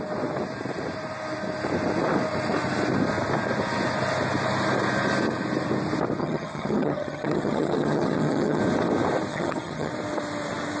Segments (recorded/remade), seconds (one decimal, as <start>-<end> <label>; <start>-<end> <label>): 0.0-6.2 recorded; 6.2-8.6 remade; 8.6-9.3 recorded; 9.3-9.9 remade; 9.9-10.8 recorded